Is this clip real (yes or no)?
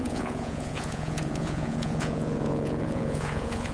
no